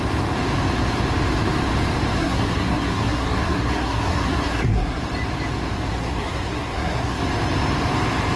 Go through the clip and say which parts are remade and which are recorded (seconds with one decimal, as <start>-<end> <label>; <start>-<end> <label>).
0.0-2.2 recorded; 2.2-5.0 remade; 5.0-5.9 recorded; 5.9-7.2 remade; 7.2-8.4 recorded